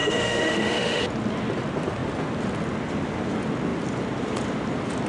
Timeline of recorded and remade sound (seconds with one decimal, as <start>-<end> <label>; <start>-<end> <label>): 0.0-1.0 remade; 1.0-5.1 recorded